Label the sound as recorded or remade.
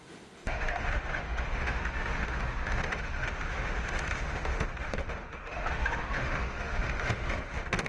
remade